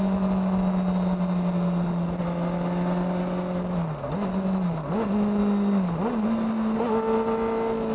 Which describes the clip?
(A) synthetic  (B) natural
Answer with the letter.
B